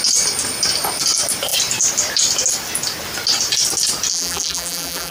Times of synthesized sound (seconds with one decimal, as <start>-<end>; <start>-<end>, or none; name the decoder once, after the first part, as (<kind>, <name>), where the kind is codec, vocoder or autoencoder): 4.1-5.1 (vocoder, BigVGAN v2)